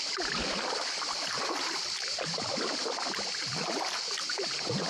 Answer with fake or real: fake